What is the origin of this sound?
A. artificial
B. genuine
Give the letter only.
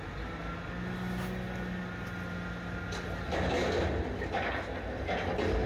B